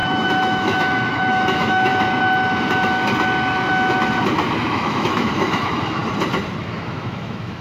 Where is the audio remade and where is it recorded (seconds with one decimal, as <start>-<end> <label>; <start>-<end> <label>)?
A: 0.0-1.9 remade; 1.9-4.7 recorded; 4.7-6.0 remade; 6.0-6.6 recorded; 6.6-7.6 remade